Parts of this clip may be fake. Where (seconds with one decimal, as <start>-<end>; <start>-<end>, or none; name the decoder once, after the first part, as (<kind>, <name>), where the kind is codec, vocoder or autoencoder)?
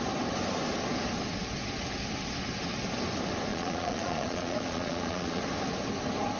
3.5-5.4 (vocoder, Vocos)